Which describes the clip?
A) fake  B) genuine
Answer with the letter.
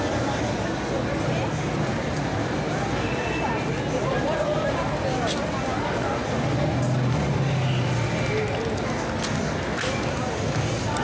B